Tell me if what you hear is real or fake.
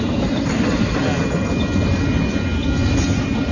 real